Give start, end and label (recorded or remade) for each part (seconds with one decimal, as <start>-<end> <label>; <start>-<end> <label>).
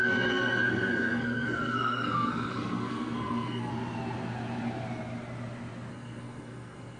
0.0-3.7 remade; 3.7-5.9 recorded; 5.9-7.0 remade